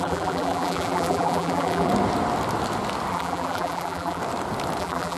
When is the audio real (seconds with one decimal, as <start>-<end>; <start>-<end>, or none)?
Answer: 1.9-3.1; 4.2-4.8